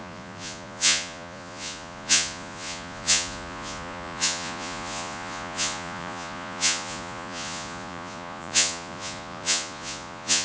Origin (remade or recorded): remade